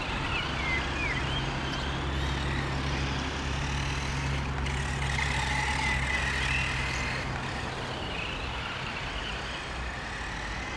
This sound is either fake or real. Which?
real